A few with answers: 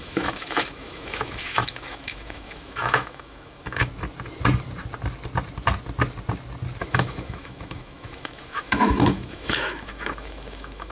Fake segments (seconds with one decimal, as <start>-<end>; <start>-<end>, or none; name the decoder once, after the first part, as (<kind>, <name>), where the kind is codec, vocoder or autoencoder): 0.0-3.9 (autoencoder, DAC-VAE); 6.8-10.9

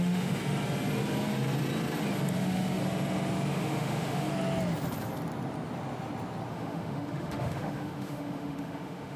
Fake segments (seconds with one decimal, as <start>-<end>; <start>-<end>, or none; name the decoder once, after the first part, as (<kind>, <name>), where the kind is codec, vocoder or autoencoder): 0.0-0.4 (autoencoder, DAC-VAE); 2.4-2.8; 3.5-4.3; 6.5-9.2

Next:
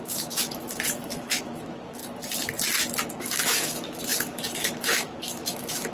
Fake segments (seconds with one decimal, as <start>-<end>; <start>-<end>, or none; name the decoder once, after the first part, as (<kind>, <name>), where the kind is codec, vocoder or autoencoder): 0.0-2.0 (autoencoder, DAC-VAE); 3.2-5.9